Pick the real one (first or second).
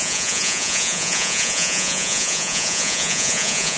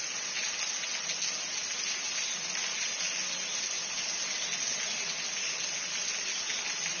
second